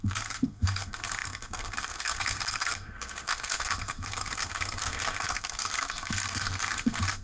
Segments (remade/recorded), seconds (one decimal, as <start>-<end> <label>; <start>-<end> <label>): 0.0-7.2 remade